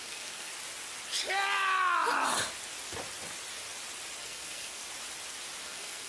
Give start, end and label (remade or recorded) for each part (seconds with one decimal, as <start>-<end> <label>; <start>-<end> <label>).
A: 0.0-0.5 remade; 0.5-4.2 recorded; 4.2-4.8 remade; 4.8-5.6 recorded; 5.6-6.1 remade